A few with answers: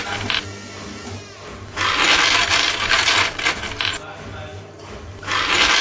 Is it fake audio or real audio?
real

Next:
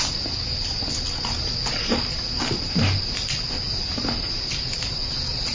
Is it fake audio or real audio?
real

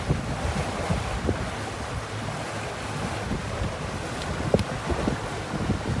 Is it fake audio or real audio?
real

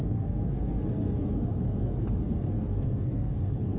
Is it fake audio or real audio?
fake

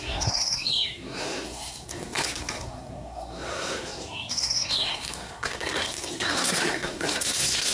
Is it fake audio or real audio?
fake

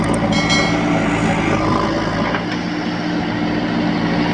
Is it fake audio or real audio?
real